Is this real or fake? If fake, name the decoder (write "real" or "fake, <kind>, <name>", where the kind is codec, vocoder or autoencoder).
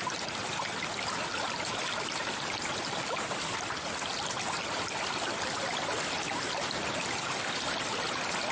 real